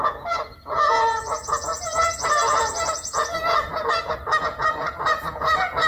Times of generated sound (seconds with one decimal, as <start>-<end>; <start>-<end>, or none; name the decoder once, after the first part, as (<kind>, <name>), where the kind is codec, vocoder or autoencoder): 0.0-5.9 (vocoder, Vocos)